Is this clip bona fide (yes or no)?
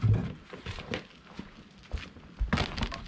yes